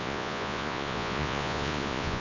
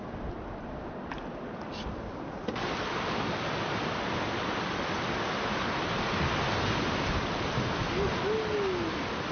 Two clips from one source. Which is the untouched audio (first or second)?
second